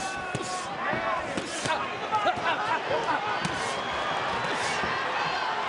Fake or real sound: real